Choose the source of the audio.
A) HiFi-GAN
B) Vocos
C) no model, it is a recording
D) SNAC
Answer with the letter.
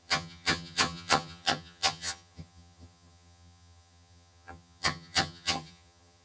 A